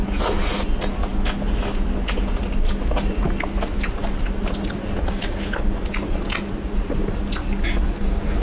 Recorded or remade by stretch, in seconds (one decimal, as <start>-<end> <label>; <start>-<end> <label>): 0.0-8.4 recorded